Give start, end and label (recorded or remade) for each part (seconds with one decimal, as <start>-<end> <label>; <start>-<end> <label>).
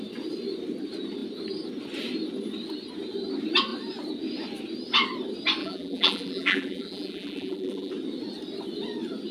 0.0-5.6 recorded; 5.6-7.9 remade; 7.9-9.3 recorded